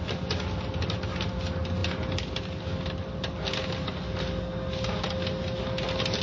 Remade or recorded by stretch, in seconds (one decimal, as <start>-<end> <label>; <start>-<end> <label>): 0.0-6.2 recorded